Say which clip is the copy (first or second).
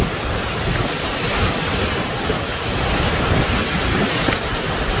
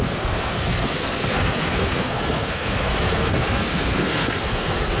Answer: second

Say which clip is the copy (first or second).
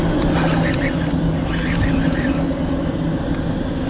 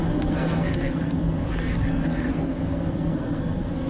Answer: second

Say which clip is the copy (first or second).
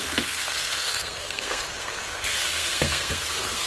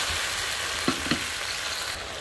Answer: first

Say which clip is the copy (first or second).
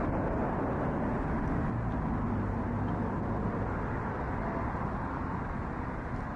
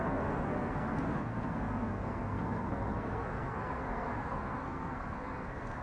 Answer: second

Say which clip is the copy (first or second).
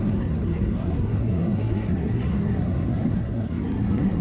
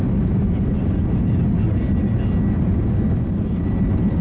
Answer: first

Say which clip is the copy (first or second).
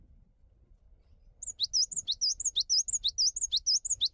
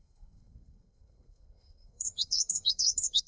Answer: second